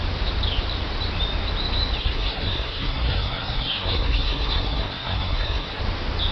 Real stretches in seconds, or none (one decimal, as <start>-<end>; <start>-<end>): 0.0-2.0; 5.8-6.3